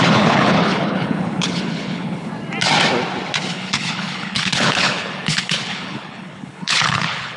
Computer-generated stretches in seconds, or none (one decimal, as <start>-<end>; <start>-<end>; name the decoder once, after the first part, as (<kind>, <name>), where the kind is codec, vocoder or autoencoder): 0.0-2.3 (codec, HILCodec); 3.5-7.4